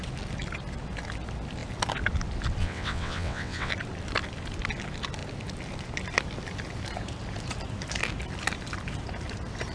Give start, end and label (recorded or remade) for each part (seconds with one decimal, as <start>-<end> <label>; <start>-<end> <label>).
0.0-2.6 recorded; 2.6-3.7 remade; 3.7-9.7 recorded